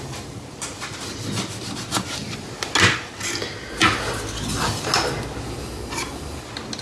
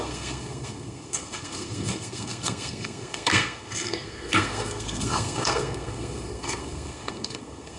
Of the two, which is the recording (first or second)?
first